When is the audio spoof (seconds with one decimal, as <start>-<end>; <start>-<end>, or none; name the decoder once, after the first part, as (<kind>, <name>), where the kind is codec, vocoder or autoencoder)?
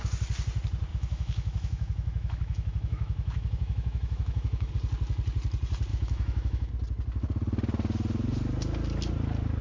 0.9-4.7 (autoencoder, DAC-VAE); 5.9-6.7